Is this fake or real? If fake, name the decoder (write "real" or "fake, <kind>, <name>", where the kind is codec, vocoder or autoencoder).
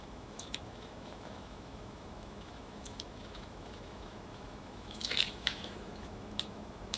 fake, autoencoder, DAC-VAE